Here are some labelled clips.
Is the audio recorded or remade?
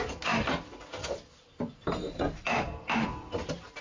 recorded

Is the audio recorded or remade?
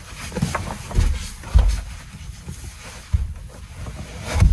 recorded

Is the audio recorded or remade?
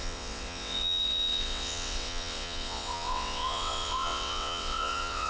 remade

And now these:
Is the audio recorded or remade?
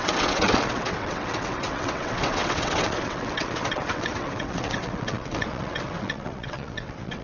remade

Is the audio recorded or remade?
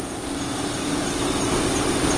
recorded